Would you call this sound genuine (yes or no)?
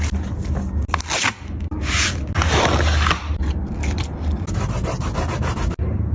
yes